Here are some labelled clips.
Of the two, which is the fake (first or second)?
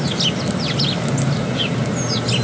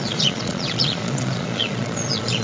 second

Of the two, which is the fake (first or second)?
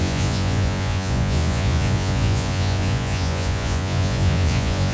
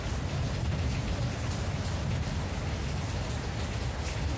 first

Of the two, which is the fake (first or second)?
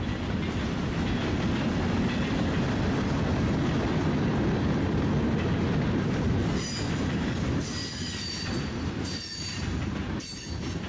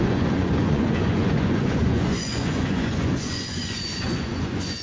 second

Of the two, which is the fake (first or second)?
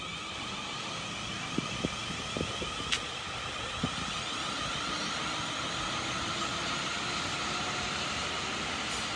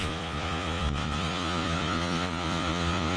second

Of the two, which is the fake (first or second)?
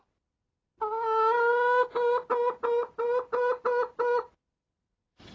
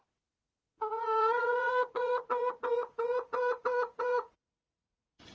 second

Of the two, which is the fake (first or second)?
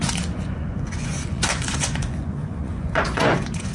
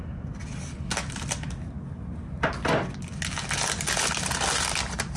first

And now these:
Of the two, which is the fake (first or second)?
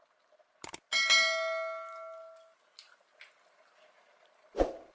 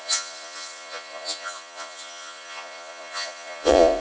second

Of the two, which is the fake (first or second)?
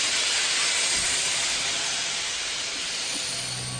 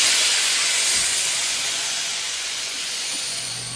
second